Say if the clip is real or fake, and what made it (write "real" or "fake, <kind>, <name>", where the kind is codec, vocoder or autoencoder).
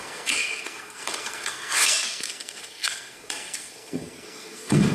fake, codec, SNAC